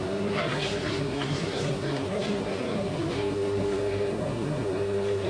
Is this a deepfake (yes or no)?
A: yes